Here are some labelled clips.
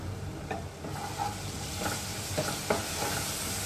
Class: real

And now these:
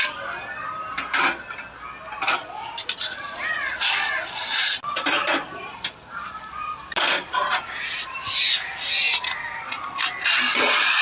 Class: real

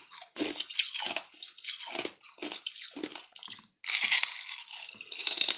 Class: real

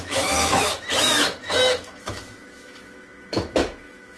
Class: fake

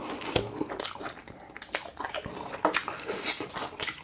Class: real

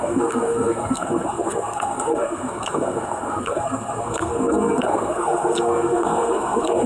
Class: fake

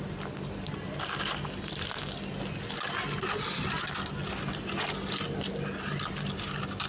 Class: real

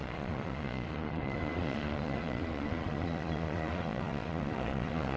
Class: fake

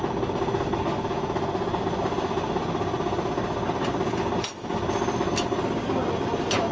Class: real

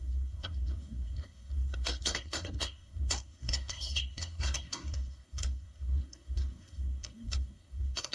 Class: fake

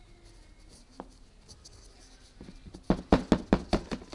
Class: real